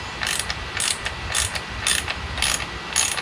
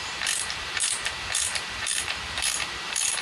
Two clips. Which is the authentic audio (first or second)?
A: first